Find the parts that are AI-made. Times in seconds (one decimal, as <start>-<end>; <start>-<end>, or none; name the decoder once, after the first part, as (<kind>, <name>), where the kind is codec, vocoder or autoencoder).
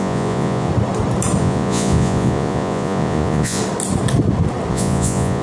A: 0.0-0.7 (vocoder, Vocos); 1.4-3.6; 4.7-5.4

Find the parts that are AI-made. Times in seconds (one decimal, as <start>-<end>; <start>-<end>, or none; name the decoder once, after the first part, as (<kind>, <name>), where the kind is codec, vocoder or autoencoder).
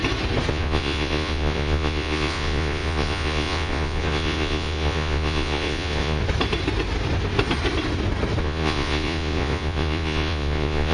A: 0.5-6.2 (vocoder, Vocos); 8.4-10.9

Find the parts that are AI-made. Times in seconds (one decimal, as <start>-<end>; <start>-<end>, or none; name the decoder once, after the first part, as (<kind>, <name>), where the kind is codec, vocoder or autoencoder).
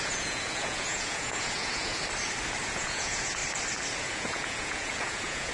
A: 0.0-1.9 (vocoder, Vocos); 2.6-3.4; 4.0-5.5